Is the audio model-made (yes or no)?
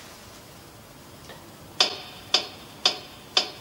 no